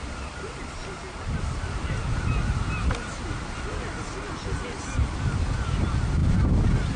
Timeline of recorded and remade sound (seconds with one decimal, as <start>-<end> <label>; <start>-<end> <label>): 0.0-7.0 recorded